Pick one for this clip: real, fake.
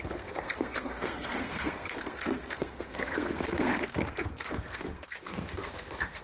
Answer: fake